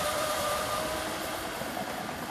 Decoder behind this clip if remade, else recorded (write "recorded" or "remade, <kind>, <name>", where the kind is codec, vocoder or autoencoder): recorded